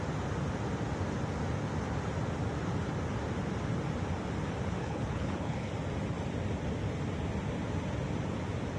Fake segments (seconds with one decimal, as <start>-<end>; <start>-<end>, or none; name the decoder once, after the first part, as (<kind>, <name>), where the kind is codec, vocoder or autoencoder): 4.8-5.7 (codec, HILCodec)